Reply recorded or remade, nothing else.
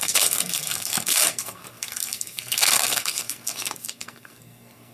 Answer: remade